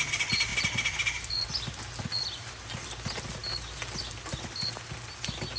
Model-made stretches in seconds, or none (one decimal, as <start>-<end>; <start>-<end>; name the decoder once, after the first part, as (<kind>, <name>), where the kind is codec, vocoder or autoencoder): none

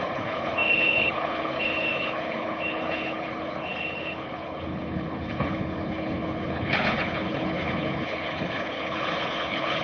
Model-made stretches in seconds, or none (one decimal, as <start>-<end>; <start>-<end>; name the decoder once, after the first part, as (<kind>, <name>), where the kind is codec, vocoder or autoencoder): 0.0-9.8 (codec, HILCodec)

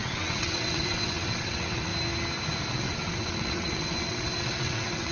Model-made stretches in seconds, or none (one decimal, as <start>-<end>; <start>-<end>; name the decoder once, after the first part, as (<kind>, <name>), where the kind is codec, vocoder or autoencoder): 0.0-1.9 (vocoder, WaveNeXt); 2.7-5.1